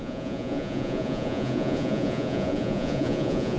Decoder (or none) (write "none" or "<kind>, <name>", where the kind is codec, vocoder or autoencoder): vocoder, Vocos